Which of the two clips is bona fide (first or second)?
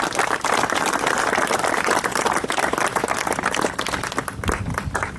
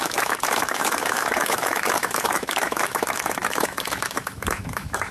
first